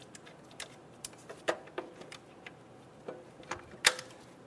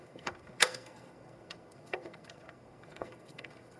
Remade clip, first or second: second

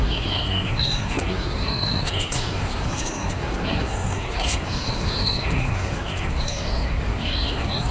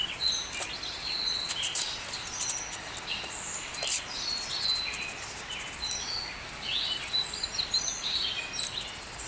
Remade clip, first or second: first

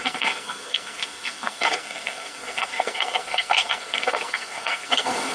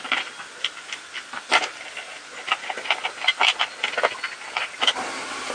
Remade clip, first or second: first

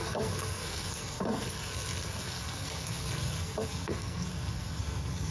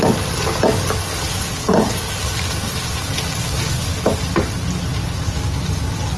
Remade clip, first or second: first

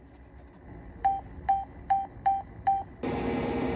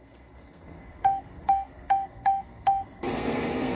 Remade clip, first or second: second